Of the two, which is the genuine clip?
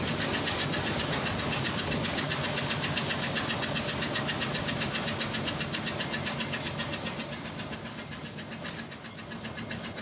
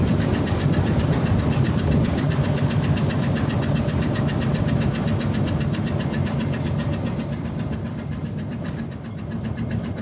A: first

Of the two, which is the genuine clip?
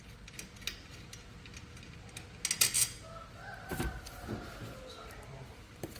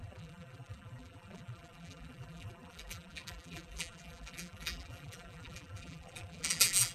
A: first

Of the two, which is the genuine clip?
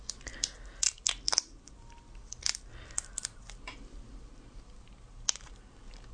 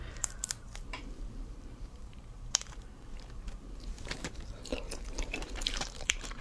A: first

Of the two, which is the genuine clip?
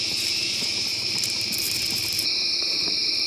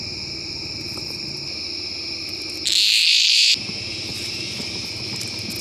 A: second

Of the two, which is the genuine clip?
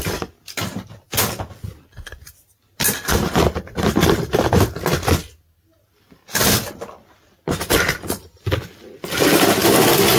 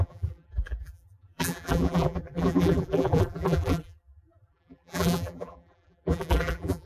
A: first